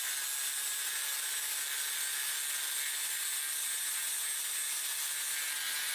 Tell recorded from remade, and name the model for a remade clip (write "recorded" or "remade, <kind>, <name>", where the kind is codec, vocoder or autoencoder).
recorded